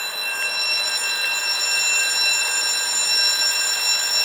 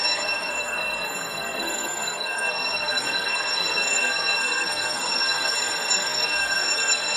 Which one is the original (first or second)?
first